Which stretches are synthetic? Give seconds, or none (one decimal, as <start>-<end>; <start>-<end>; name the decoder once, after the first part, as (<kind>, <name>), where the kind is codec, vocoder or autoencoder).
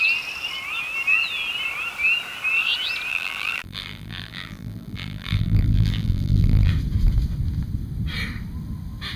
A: 3.1-6.7 (vocoder, BigVGAN v2)